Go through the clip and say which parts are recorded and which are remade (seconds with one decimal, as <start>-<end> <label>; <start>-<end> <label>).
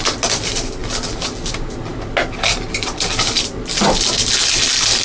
0.0-5.0 recorded